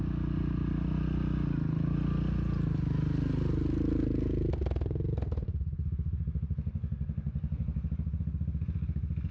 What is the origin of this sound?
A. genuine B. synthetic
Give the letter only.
A